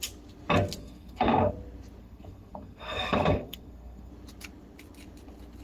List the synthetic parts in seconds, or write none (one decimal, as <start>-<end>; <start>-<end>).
0.8-1.5; 2.0-4.1